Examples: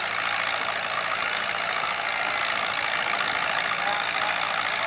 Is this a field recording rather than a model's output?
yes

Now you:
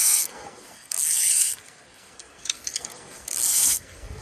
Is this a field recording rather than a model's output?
no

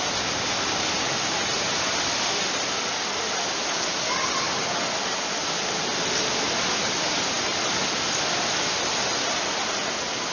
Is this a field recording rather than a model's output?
yes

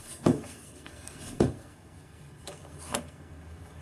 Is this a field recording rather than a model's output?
no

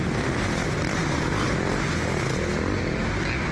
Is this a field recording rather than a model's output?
yes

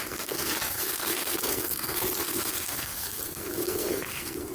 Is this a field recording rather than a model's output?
no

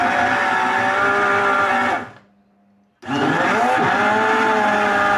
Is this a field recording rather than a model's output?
yes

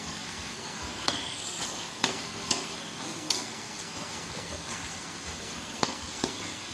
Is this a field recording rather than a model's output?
no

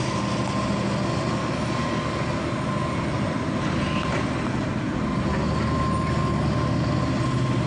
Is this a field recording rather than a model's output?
yes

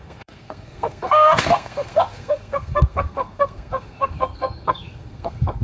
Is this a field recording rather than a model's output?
no